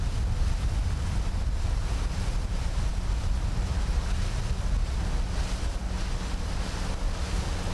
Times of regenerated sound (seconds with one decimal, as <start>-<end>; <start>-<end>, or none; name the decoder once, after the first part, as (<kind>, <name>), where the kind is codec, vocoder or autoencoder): none